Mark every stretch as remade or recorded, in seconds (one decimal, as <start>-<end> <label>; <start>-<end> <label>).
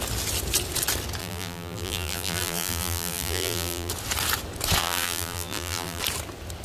0.0-1.2 recorded; 1.2-3.9 remade; 3.9-4.8 recorded; 4.8-6.0 remade; 6.0-6.6 recorded